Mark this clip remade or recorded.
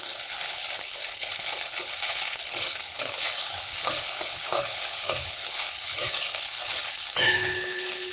remade